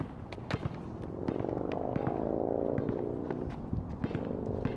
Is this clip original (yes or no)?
yes